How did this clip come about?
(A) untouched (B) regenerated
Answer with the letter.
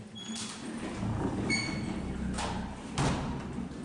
A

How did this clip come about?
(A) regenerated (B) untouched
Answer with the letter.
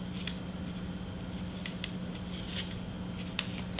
B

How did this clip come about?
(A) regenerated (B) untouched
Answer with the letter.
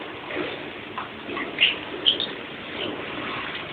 B